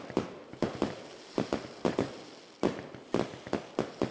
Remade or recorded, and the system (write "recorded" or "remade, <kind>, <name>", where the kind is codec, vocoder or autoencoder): recorded